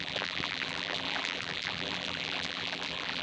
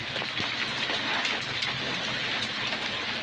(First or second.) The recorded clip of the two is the second